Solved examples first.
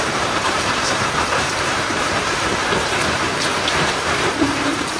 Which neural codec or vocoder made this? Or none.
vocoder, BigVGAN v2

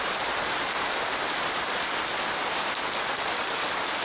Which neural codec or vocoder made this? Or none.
vocoder, BigVGAN v2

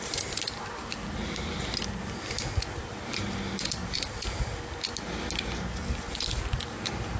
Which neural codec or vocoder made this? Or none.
none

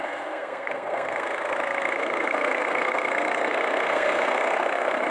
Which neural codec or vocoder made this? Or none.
codec, SNAC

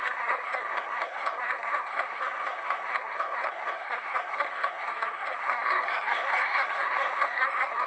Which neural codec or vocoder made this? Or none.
codec, SNAC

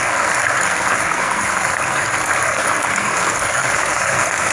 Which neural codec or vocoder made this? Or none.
codec, SNAC